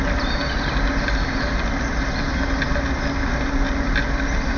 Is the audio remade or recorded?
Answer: recorded